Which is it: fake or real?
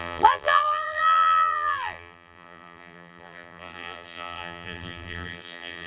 fake